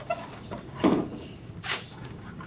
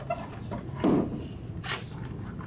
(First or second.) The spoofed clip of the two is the first